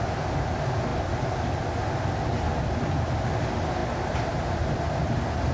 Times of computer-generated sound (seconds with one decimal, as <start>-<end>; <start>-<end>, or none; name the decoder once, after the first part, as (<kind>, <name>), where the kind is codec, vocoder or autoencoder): none